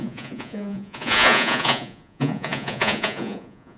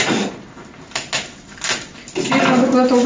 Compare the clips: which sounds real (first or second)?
second